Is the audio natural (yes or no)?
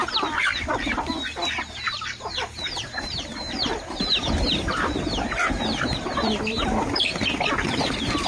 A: yes